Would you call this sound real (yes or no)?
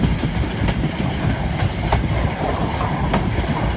yes